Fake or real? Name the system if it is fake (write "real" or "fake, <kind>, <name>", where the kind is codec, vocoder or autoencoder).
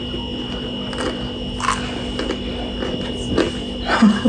real